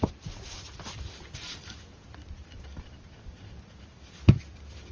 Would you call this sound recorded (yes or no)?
yes